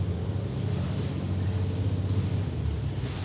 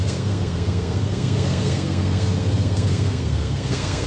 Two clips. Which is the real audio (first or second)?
first